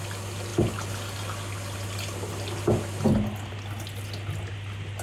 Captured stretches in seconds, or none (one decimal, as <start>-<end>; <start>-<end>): 0.0-5.0